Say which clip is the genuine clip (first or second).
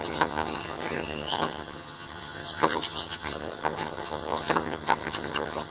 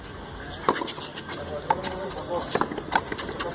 second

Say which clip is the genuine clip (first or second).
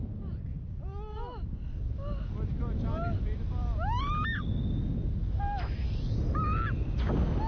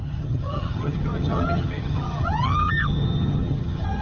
first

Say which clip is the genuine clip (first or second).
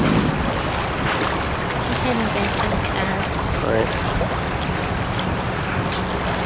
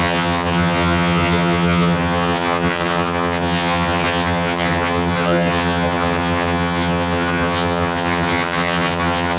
first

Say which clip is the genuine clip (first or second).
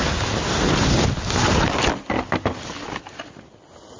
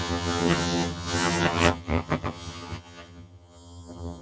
first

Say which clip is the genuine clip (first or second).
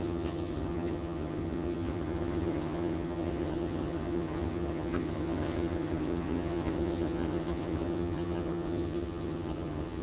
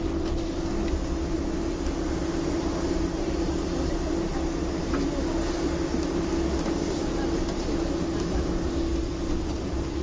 second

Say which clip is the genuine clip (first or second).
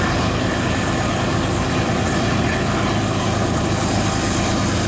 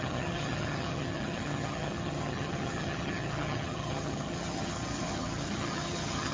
first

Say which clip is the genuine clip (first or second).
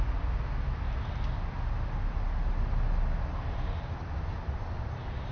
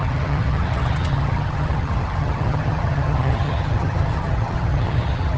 first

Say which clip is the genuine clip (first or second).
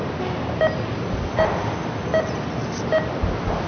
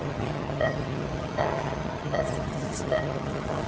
first